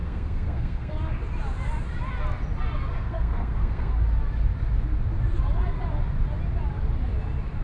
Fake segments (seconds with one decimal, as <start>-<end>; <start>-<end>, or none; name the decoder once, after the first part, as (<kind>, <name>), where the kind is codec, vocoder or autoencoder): 0.0-0.9 (codec, SNAC); 2.9-3.9